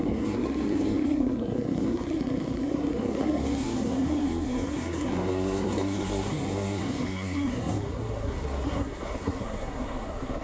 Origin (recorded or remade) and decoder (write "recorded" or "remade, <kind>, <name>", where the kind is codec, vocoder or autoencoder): remade, codec, SNAC